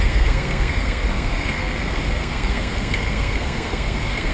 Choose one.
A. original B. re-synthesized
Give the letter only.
B